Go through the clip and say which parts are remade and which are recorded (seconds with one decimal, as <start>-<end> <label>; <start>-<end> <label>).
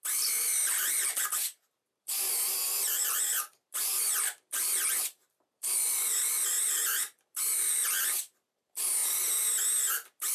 0.0-9.0 remade; 9.0-9.9 recorded; 9.9-10.3 remade